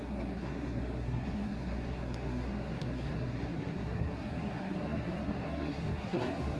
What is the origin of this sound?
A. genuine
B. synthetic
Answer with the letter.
B